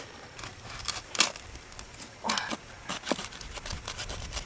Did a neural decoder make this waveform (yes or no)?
no